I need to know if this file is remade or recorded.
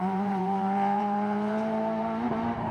remade